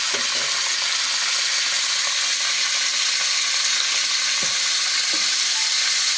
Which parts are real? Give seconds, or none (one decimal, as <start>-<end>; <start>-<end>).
0.0-6.2